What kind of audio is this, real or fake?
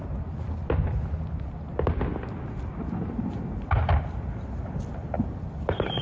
real